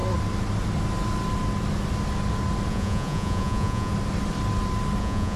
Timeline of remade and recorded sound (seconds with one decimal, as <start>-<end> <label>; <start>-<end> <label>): 0.0-2.7 recorded; 2.7-3.9 remade; 3.9-5.0 recorded; 5.0-5.4 remade